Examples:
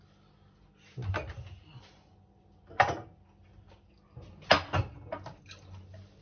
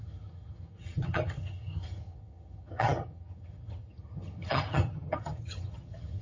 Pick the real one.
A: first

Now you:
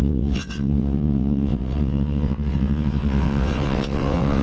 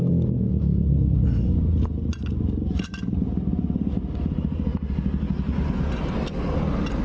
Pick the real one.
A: second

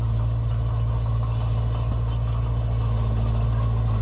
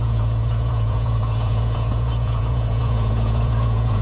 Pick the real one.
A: first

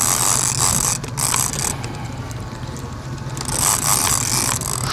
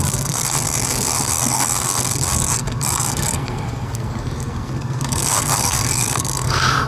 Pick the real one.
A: first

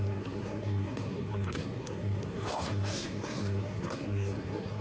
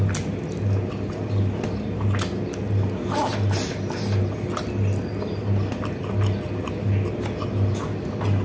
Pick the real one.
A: second